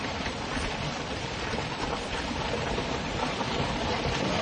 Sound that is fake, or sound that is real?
fake